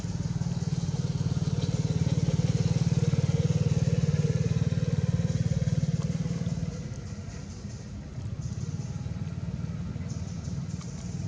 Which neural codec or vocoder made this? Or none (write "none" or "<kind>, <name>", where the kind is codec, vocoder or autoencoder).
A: none